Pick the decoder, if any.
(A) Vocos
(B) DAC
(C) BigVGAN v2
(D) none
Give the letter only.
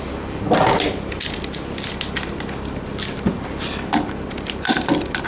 D